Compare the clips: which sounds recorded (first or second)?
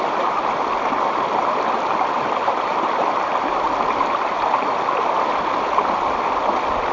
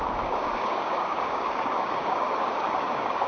first